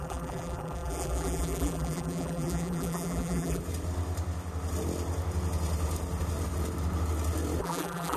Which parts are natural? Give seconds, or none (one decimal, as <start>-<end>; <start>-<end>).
3.6-7.6